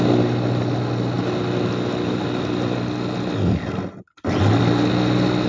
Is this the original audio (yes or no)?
yes